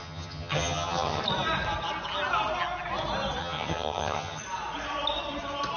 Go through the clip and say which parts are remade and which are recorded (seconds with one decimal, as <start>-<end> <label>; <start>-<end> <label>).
0.0-1.2 remade; 1.2-3.4 recorded; 3.4-4.4 remade; 4.4-5.8 recorded